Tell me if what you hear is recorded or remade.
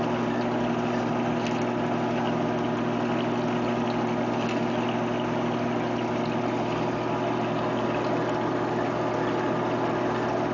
recorded